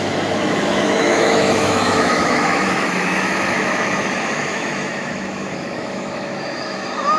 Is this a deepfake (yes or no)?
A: yes